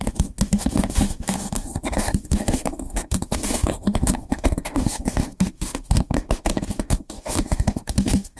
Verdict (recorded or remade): remade